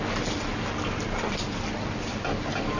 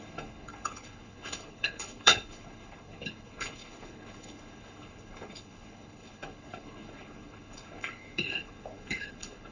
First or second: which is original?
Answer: first